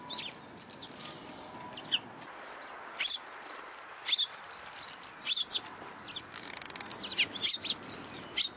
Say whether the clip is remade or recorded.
recorded